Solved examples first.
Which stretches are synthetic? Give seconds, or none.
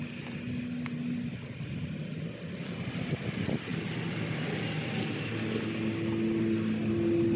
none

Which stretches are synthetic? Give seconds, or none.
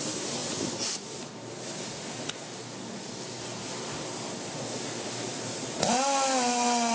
none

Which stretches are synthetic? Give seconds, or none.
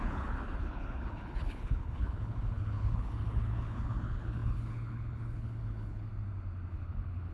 0.0-6.1 (codec, HILCodec); 6.7-7.3